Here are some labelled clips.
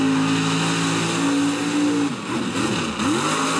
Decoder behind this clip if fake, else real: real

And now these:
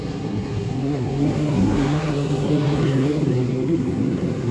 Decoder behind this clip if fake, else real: fake, codec, SNAC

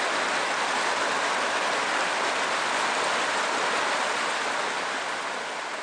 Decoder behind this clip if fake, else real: real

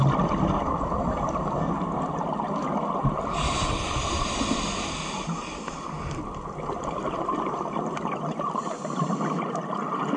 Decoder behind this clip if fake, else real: real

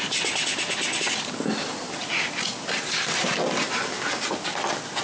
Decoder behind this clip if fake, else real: real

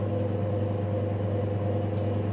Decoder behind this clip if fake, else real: real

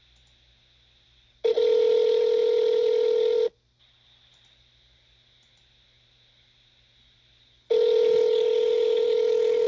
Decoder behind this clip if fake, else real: real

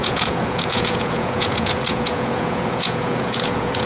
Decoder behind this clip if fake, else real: fake, vocoder, Vocos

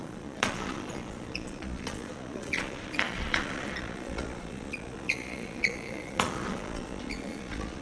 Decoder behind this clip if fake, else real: fake, vocoder, Vocos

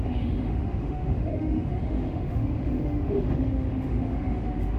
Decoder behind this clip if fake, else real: fake, autoencoder, DAC-VAE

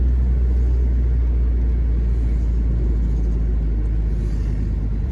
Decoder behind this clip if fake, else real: real